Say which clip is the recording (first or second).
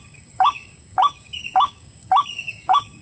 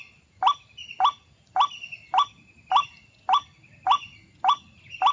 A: second